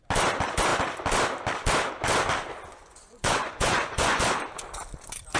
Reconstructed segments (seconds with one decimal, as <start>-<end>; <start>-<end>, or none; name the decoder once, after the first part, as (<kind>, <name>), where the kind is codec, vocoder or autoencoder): 2.7-4.2 (vocoder, Vocos)